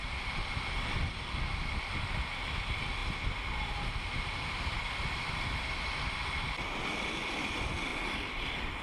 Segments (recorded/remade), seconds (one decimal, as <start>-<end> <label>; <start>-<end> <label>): 0.0-3.0 recorded; 3.0-5.2 remade; 5.2-7.9 recorded; 7.9-8.8 remade